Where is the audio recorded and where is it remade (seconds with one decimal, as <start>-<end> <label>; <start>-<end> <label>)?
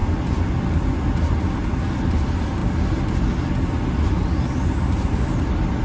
0.0-5.8 recorded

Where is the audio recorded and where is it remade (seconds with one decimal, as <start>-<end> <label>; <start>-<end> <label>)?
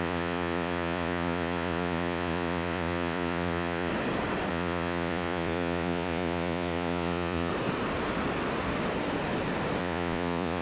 0.0-3.9 remade; 3.9-4.5 recorded; 4.5-7.5 remade; 7.5-9.8 recorded; 9.8-10.6 remade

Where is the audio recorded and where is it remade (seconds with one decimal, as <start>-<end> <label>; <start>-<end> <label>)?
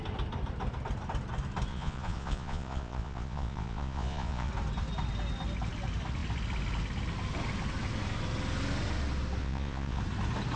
0.0-1.7 recorded; 1.7-4.5 remade; 4.5-9.4 recorded; 9.4-10.0 remade; 10.0-10.6 recorded